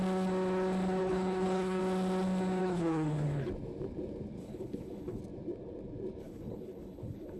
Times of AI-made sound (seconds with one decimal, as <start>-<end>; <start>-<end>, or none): 1.0-1.8; 2.6-3.5; 4.4-5.2; 6.2-7.4